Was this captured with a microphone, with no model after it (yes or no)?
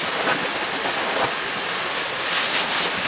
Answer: yes